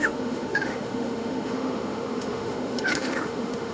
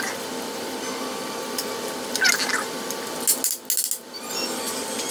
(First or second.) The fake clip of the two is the first